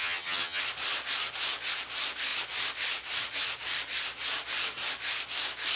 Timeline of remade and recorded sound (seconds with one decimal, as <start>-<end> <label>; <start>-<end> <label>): 0.0-0.6 remade; 0.6-5.8 recorded